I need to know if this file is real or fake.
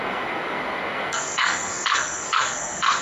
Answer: fake